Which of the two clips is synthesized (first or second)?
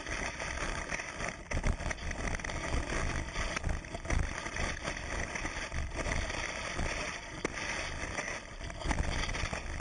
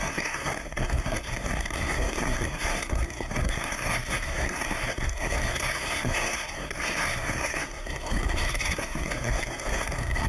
second